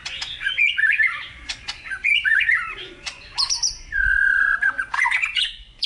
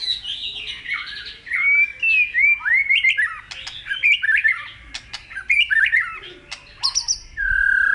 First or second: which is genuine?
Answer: second